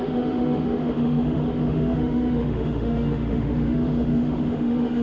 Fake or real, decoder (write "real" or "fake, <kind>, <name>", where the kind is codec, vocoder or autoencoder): fake, autoencoder, DAC-VAE